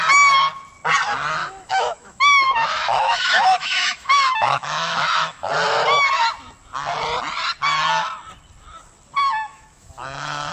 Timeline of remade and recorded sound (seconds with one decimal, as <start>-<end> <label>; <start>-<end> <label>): 0.0-1.4 recorded; 1.4-5.5 remade; 5.5-9.5 recorded; 9.5-10.5 remade